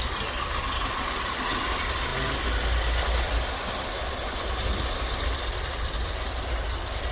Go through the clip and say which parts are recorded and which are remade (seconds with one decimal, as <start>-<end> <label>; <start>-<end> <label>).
0.0-7.1 recorded